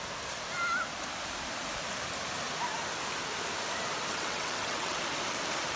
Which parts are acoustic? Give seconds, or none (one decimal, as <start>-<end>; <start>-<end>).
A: 0.0-4.1; 5.0-5.8